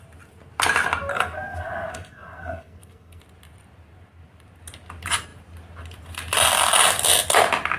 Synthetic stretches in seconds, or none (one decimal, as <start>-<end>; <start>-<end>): 1.1-3.2